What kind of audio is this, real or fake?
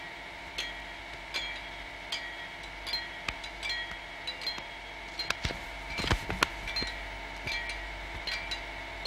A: real